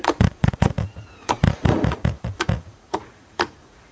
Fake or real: fake